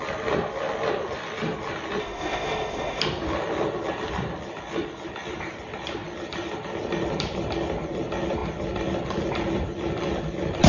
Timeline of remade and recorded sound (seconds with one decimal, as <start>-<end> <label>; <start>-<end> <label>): 0.0-2.0 recorded; 2.0-3.0 remade; 3.0-10.7 recorded